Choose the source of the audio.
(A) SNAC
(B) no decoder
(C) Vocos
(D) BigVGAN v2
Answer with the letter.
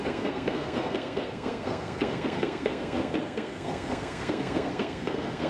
A